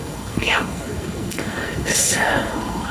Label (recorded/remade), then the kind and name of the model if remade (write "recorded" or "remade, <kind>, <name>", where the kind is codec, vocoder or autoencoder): remade, codec, SNAC